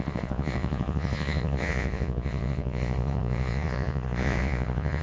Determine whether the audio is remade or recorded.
remade